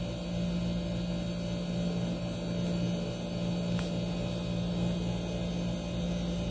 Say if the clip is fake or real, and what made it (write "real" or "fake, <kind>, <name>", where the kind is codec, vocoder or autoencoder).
real